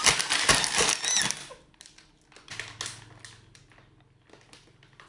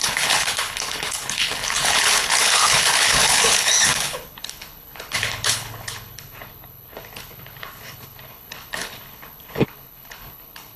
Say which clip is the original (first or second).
first